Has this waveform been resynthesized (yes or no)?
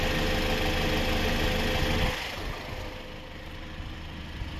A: no